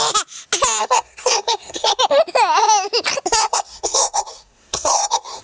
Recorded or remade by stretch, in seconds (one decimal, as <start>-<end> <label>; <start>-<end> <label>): 0.0-0.8 recorded; 0.8-2.0 remade; 2.0-3.4 recorded; 3.4-5.4 remade